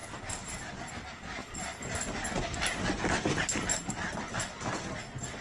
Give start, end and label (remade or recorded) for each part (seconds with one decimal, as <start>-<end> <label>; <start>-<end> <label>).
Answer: 0.0-5.4 recorded